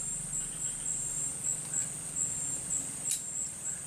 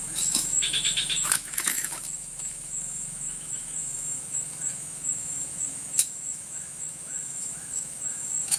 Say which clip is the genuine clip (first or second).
first